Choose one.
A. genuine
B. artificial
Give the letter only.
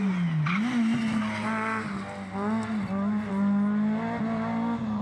A